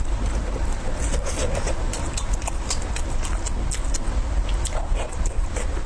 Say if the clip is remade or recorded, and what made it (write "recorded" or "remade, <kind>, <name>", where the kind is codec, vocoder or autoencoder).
recorded